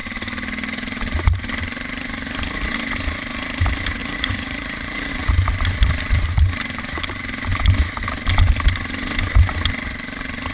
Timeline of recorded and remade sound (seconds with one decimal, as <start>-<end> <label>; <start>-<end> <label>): 0.0-4.0 recorded; 4.0-5.1 remade; 5.1-10.5 recorded